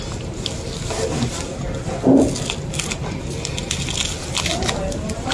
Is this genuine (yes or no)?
yes